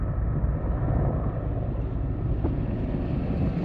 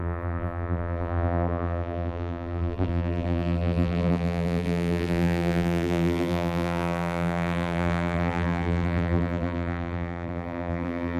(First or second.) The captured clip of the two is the first